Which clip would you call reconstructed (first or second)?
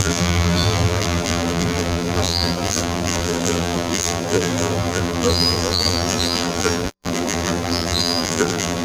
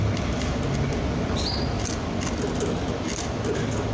first